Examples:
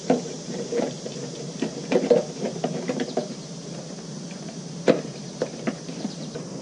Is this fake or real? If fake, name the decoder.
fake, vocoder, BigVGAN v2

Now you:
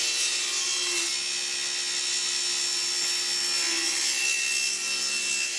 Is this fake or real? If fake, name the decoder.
real